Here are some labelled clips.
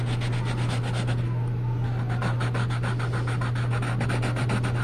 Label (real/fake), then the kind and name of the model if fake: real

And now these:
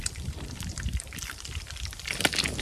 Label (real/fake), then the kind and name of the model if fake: fake, vocoder, BigVGAN v2